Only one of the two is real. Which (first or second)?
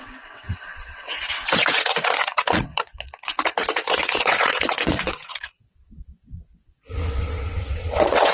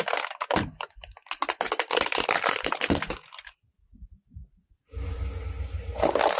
second